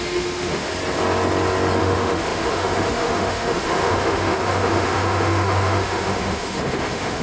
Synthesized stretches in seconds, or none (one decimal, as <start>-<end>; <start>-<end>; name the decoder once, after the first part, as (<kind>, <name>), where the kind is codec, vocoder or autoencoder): 0.0-0.7 (autoencoder, DAC-VAE); 1.8-7.2